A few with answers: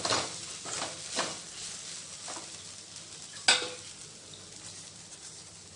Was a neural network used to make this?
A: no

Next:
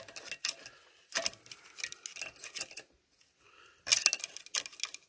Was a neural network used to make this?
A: no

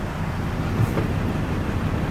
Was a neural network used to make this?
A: no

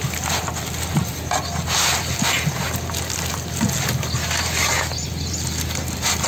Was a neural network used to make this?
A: no